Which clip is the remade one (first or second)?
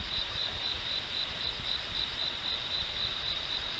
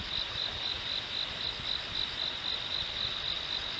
first